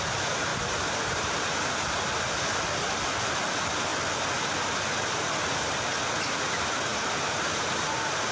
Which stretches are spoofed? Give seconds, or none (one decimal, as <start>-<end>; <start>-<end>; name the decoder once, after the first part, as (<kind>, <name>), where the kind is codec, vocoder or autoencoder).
0.5-2.2 (vocoder, BigVGAN v2); 6.9-7.6

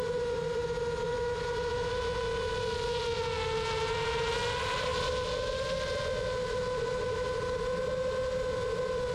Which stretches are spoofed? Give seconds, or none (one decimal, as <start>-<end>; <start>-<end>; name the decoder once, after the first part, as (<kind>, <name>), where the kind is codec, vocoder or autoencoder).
none

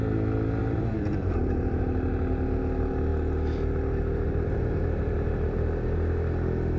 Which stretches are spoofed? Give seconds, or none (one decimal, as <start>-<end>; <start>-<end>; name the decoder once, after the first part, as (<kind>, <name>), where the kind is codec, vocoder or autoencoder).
0.6-1.8 (vocoder, BigVGAN v2)

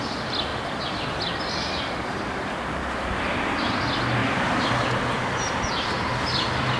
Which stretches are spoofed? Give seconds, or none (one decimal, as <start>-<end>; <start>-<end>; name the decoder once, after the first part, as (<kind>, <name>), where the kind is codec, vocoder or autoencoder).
0.5-2.5 (vocoder, BigVGAN v2); 4.2-6.1